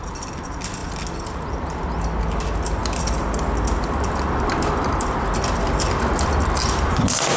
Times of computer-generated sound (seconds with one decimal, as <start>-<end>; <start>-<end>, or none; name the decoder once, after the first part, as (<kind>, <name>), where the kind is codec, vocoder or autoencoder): none